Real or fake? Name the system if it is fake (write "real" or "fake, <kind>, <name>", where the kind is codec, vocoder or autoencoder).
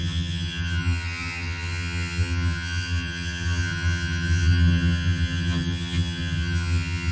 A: fake, vocoder, HiFi-GAN